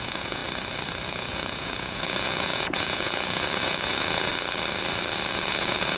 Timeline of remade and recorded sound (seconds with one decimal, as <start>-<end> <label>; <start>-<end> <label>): 0.0-0.4 remade; 0.4-1.1 recorded; 1.1-4.3 remade; 4.3-5.3 recorded; 5.3-6.0 remade